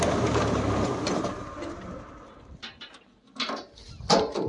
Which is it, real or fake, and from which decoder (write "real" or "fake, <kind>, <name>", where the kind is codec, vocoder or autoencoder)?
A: real